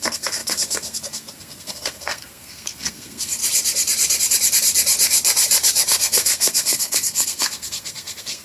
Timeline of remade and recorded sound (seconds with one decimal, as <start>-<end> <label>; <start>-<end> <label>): 0.0-3.4 remade; 3.4-6.0 recorded; 6.0-8.4 remade